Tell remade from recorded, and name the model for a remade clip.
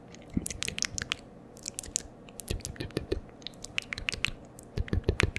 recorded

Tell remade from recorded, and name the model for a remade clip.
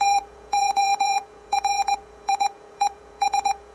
remade, vocoder, Vocos